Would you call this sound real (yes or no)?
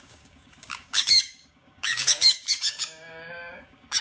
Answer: no